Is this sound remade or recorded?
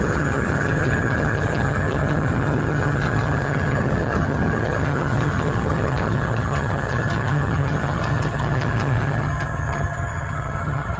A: remade